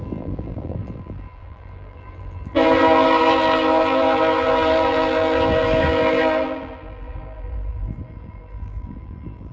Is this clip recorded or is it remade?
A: remade